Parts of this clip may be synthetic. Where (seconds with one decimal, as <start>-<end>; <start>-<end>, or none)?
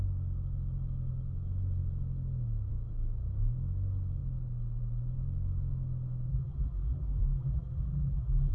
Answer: 6.3-8.5